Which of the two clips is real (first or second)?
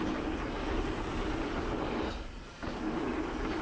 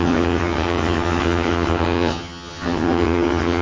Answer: first